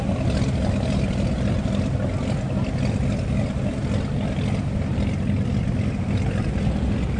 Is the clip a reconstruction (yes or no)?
no